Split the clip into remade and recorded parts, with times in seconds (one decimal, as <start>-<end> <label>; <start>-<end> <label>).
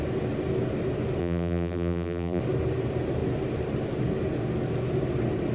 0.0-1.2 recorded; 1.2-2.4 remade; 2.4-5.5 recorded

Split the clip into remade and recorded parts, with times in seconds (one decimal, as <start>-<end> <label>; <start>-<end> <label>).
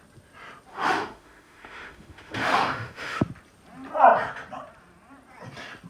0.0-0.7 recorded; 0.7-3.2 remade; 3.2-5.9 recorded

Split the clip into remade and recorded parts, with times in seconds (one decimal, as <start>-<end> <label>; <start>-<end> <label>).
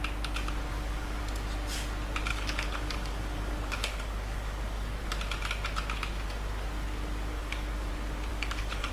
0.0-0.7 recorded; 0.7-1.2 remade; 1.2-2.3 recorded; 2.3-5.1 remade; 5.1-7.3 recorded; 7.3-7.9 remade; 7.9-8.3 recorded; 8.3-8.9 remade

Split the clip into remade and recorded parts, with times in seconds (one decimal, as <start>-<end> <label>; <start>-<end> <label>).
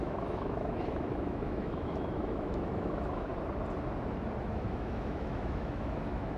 0.0-3.3 remade; 3.3-4.4 recorded; 4.4-6.4 remade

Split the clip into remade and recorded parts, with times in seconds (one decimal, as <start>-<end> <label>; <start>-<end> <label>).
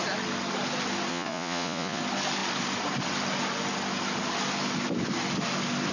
0.0-1.1 recorded; 1.1-2.0 remade; 2.0-5.9 recorded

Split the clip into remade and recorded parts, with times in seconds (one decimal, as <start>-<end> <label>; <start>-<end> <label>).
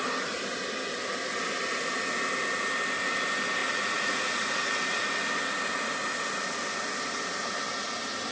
0.0-3.6 recorded; 3.6-4.7 remade; 4.7-8.3 recorded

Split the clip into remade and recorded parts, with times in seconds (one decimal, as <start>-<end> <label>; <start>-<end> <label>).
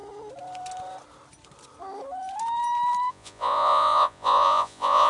0.0-3.1 recorded; 3.1-5.1 remade